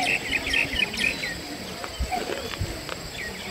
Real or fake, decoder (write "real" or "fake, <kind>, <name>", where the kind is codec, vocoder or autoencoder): real